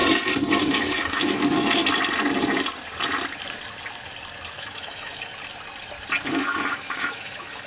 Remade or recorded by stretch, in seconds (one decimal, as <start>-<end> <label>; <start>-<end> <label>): 0.0-0.6 recorded; 0.6-1.8 remade; 1.8-4.6 recorded; 4.6-5.3 remade; 5.3-6.3 recorded; 6.3-7.7 remade